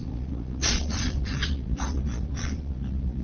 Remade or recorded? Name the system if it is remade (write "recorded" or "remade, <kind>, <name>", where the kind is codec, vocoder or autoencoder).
remade, vocoder, Vocos